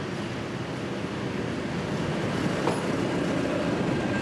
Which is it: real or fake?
real